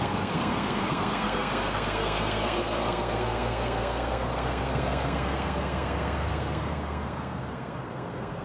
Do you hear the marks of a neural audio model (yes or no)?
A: yes